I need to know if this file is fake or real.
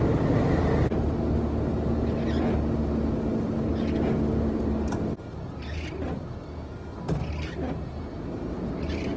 real